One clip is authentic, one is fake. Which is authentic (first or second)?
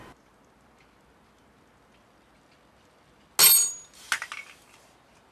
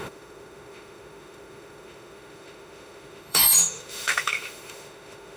first